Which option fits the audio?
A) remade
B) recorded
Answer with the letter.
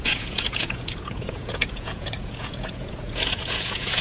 A